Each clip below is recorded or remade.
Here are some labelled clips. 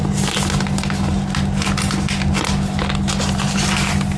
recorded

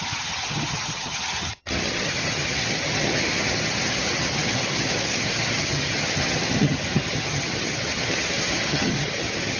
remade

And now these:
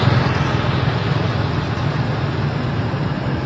recorded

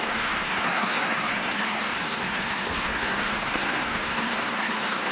remade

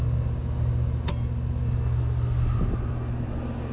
recorded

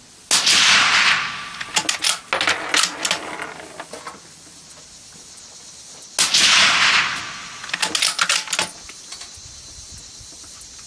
recorded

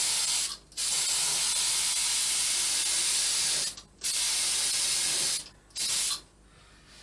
recorded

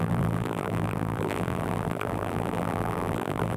remade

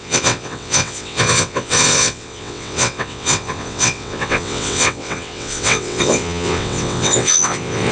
remade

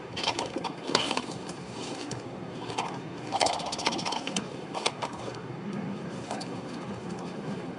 remade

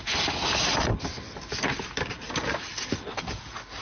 recorded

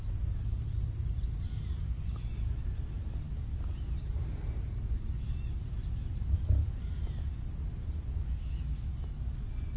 recorded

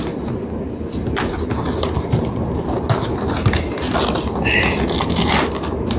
recorded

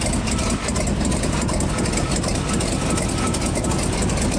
recorded